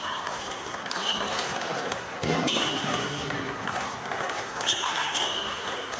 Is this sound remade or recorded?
remade